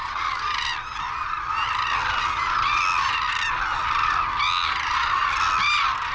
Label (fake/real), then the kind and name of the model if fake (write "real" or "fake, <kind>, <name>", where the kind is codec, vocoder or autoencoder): real